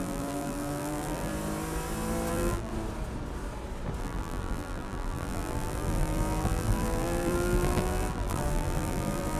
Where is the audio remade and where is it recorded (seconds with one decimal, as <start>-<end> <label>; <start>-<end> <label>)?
0.0-1.3 remade; 1.3-2.3 recorded; 2.3-2.7 remade; 2.7-4.0 recorded; 4.0-9.4 remade